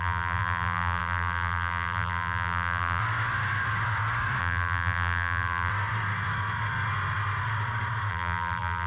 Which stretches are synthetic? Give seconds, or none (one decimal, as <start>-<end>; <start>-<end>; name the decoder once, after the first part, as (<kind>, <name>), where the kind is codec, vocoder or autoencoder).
0.0-3.0 (vocoder, BigVGAN v2); 4.4-5.7; 8.1-8.9